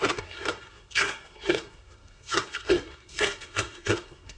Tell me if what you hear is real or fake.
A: fake